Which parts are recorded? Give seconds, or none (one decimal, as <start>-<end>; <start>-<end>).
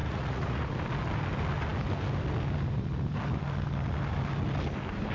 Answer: 0.7-5.1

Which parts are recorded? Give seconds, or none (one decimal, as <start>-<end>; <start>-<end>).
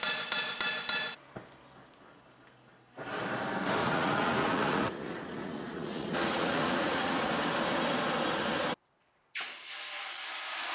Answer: 0.0-3.8; 7.3-10.7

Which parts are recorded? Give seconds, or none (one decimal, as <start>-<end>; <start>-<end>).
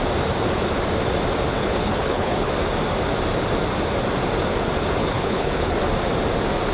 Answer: 0.0-1.6; 2.5-5.0; 5.8-6.7